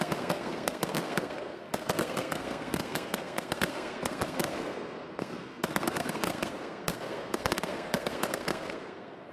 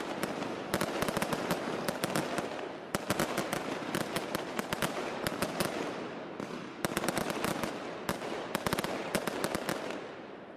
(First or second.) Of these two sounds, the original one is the second